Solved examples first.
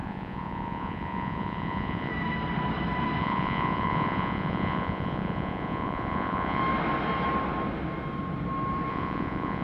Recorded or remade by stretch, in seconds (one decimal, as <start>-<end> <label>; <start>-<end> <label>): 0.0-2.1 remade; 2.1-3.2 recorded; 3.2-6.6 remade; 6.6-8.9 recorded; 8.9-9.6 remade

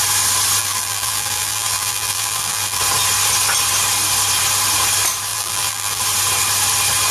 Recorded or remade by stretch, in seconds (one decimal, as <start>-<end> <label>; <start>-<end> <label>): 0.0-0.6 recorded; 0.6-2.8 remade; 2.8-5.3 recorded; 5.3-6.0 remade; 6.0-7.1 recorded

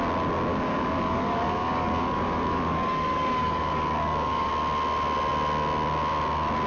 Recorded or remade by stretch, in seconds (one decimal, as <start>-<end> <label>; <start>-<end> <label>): 0.0-0.5 recorded; 0.5-4.5 remade; 4.5-6.7 recorded

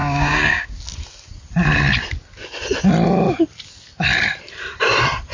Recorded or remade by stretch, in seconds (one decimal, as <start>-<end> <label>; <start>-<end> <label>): 0.0-0.8 remade; 0.8-5.3 recorded

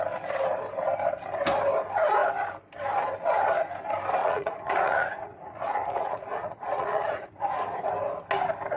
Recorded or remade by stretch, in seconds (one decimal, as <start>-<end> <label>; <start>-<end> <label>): 0.0-4.2 recorded; 4.2-7.3 remade; 7.3-8.8 recorded

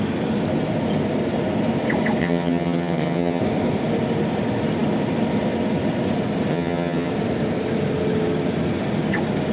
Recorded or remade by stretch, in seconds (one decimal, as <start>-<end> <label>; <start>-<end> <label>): 0.0-2.2 recorded; 2.2-3.4 remade; 3.4-6.5 recorded; 6.5-7.1 remade; 7.1-9.5 recorded

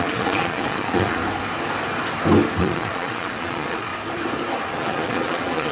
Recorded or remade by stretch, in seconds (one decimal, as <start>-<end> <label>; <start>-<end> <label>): 0.0-1.2 remade; 1.2-2.6 recorded; 2.6-3.9 remade; 3.9-4.7 recorded; 4.7-5.7 remade

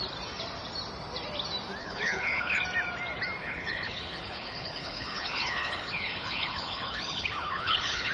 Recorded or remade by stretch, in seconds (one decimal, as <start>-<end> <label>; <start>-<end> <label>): 0.0-1.8 recorded; 1.8-2.6 remade; 2.6-3.4 recorded; 3.4-8.1 remade